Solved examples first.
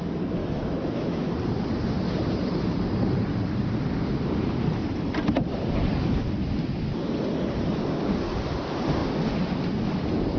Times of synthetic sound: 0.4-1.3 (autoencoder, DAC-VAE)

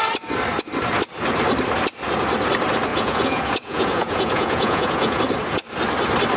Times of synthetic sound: 2.9-5.2 (vocoder, Vocos)

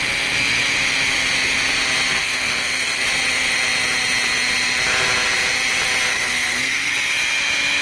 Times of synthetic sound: 2.2-3.0 (codec, SNAC); 6.1-6.9

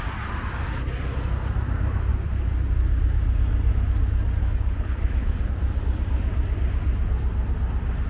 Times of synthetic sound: 4.4-5.4 (codec, HILCodec)

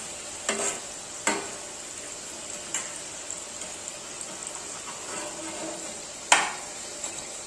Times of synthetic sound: none

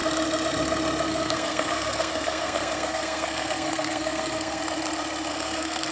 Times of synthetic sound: 1.1-4.6 (codec, SNAC); 5.3-5.9

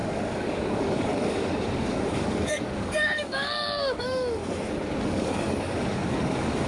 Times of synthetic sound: 0.0-4.4 (codec, DAC); 5.0-6.7